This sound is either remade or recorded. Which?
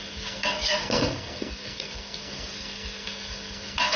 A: remade